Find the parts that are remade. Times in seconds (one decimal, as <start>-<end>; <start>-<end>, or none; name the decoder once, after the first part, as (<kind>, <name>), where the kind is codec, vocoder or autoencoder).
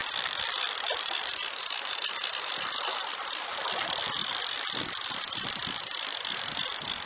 none